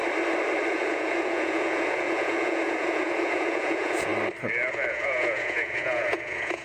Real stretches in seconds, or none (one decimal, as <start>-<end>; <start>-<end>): 0.0-0.7; 4.1-4.9